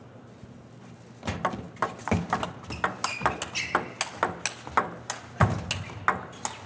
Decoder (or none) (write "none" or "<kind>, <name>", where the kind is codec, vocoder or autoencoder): none